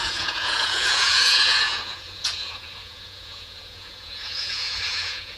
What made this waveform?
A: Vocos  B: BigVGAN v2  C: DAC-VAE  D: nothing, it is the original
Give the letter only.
A